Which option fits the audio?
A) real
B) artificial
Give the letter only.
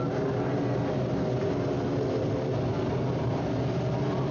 A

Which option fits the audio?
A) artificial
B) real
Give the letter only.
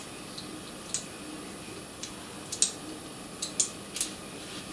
B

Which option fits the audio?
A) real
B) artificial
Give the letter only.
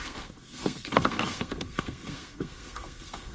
B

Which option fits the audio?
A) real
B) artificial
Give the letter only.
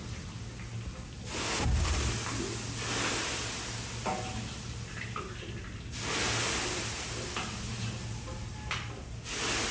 A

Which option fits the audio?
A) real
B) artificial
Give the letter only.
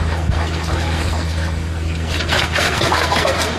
B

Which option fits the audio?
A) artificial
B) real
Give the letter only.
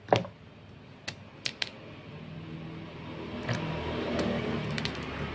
B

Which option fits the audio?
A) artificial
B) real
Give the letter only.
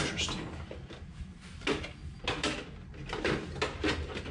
B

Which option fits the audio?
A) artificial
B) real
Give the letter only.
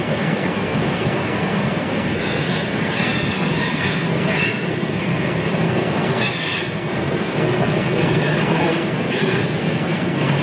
A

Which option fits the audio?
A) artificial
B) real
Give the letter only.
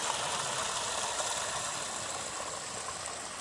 B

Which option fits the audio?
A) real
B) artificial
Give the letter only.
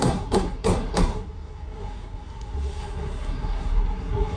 B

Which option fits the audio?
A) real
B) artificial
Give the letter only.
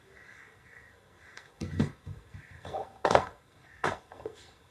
B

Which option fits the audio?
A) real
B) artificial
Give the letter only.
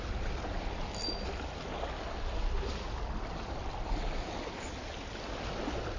A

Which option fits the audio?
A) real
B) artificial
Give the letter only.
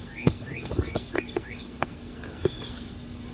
B